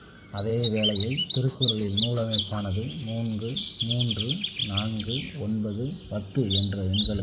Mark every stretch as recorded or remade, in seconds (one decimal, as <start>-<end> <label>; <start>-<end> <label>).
0.0-0.5 recorded; 0.5-3.6 remade; 3.6-7.2 recorded